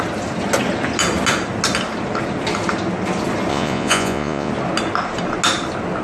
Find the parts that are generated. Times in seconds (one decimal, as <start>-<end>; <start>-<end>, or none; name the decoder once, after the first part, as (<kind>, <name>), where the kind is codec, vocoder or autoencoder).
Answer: 3.5-4.5 (vocoder, Vocos)